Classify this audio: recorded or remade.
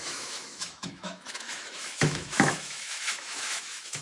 remade